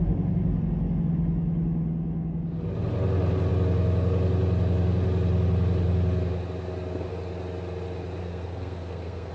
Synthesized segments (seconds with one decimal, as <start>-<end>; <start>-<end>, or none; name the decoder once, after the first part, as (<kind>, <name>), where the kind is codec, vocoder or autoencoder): 8.2-9.3 (codec, SNAC)